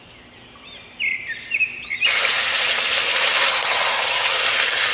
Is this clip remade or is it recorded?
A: recorded